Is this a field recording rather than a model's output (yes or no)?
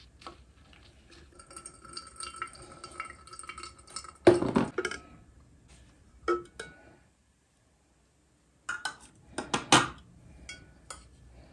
yes